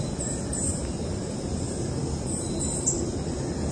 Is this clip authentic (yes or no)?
yes